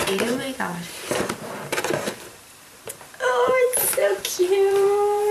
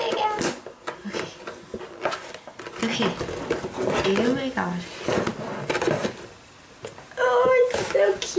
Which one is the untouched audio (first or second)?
second